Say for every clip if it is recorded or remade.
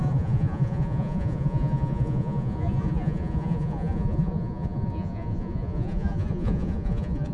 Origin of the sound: remade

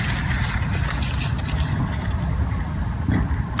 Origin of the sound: recorded